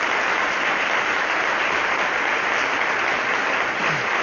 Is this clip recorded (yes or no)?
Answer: yes